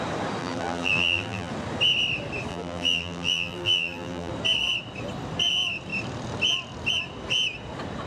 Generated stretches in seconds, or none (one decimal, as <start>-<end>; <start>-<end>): 0.4-1.5; 2.5-4.3